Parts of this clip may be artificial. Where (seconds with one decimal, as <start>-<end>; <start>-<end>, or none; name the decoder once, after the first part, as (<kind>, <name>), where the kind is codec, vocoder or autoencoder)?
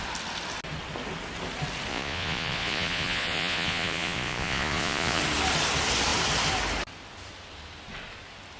1.9-5.2 (vocoder, Vocos)